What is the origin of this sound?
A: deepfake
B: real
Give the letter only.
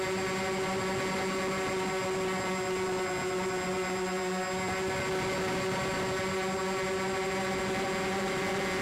B